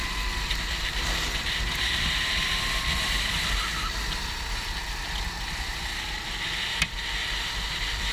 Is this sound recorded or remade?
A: recorded